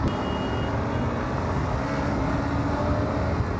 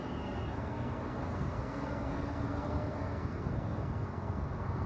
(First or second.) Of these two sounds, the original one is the first